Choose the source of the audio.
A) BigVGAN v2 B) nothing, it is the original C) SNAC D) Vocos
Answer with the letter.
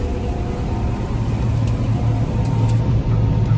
B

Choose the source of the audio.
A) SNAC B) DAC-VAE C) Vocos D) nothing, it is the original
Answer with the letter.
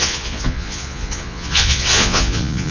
C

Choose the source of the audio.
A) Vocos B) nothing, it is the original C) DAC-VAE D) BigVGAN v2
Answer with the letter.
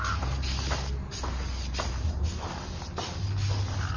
B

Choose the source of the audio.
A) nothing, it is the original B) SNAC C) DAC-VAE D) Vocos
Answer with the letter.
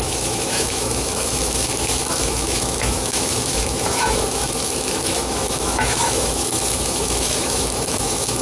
C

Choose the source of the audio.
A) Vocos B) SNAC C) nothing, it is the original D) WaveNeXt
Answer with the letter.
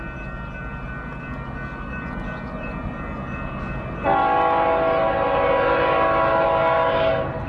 C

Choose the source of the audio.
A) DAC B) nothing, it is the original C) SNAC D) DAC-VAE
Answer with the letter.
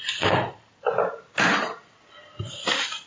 B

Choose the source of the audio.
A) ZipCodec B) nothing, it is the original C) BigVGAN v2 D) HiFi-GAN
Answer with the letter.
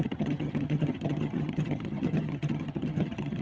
D